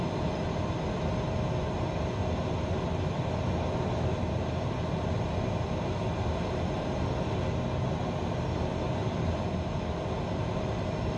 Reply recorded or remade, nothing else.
recorded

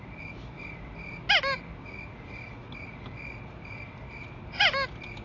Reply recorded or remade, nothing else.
recorded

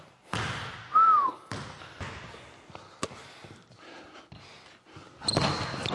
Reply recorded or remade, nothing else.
recorded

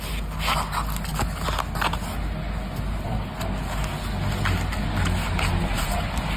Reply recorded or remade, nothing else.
recorded